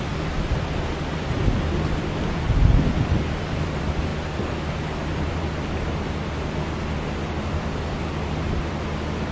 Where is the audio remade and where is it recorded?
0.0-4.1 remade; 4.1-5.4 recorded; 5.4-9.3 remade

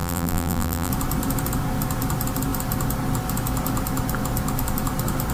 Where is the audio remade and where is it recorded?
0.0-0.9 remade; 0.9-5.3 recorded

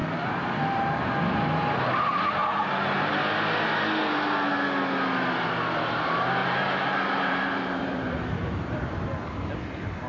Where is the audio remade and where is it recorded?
0.0-1.1 remade; 1.1-2.4 recorded; 2.4-3.1 remade; 3.1-6.4 recorded; 6.4-9.0 remade; 9.0-10.1 recorded

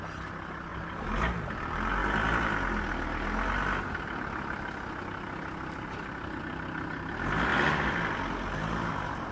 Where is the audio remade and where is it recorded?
0.0-0.7 recorded; 0.7-1.4 remade; 1.4-9.3 recorded

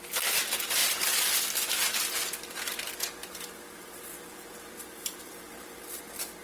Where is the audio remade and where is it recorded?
0.0-3.2 recorded; 3.2-6.0 remade; 6.0-6.4 recorded

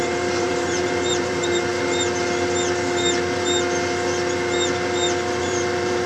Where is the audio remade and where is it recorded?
0.0-1.7 remade; 1.7-5.4 recorded; 5.4-6.1 remade

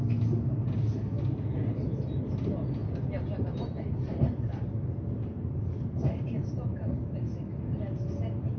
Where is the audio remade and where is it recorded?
0.0-1.6 recorded; 1.6-2.2 remade; 2.2-2.8 recorded; 2.8-7.0 remade; 7.0-8.6 recorded

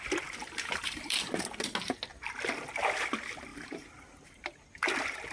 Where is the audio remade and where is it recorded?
0.0-0.4 recorded; 0.4-1.3 remade; 1.3-3.5 recorded; 3.5-4.6 remade; 4.6-5.3 recorded